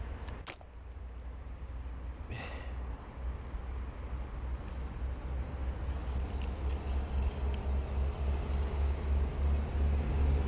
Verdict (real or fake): real